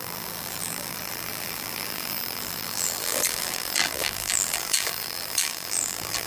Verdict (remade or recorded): remade